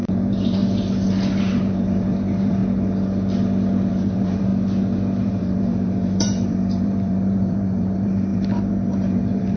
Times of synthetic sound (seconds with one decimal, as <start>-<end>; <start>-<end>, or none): 0.0-0.6; 1.4-2.6; 3.9-4.5; 5.2-9.6